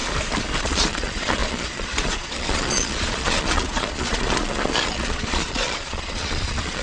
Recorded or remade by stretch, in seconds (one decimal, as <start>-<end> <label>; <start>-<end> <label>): 0.0-0.6 recorded; 0.6-6.8 remade